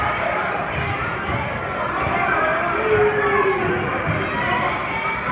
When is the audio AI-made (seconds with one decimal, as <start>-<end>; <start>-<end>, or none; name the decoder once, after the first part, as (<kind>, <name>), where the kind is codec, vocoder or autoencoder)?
0.0-1.1 (vocoder, BigVGAN v2); 1.8-2.5